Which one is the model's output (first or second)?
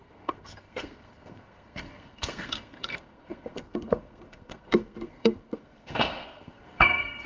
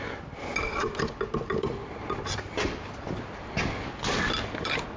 first